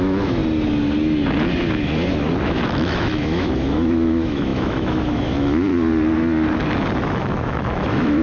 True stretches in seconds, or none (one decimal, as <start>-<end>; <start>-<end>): 0.4-2.4; 5.7-7.0